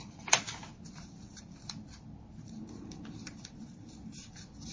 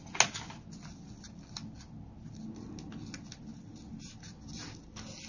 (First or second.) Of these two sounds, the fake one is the first